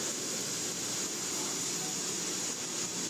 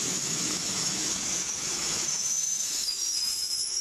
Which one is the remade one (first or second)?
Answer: second